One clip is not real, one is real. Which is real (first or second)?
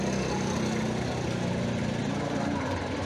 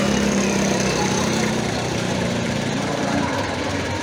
first